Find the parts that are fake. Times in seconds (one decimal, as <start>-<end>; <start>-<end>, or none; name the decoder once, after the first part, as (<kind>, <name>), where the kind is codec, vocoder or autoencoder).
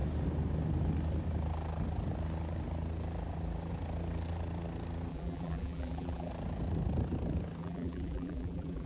5.1-6.3 (vocoder, BigVGAN v2); 7.6-8.9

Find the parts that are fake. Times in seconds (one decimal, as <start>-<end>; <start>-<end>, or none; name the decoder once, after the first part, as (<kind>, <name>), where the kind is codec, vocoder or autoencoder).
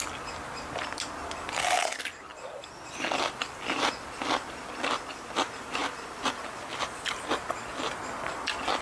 2.3-4.7 (vocoder, BigVGAN v2); 5.8-6.4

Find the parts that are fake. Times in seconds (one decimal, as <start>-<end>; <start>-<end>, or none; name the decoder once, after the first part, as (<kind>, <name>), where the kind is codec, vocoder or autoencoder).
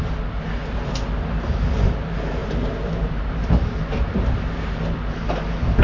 2.4-3.8 (vocoder, BigVGAN v2)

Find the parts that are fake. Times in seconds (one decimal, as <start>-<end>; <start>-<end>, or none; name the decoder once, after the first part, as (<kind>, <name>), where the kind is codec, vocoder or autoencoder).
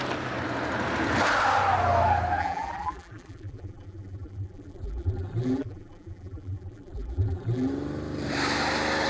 2.4-7.7 (vocoder, BigVGAN v2)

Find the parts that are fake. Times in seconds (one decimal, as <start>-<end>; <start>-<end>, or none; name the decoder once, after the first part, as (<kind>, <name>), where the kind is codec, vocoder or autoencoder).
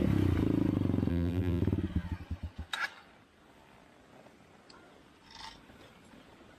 1.1-1.6 (vocoder, BigVGAN v2)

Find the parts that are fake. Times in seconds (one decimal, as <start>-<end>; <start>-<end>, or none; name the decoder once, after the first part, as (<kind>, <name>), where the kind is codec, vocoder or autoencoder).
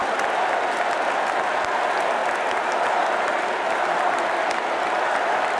none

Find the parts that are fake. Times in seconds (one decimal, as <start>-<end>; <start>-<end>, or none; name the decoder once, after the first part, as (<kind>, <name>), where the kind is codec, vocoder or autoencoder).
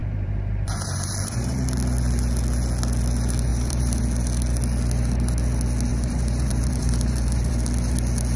0.0-1.5 (vocoder, BigVGAN v2); 3.5-4.0; 5.9-7.5